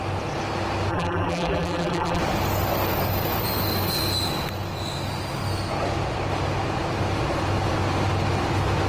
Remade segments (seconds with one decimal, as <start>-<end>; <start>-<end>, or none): 0.9-2.2